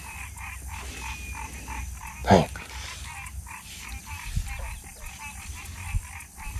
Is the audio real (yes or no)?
yes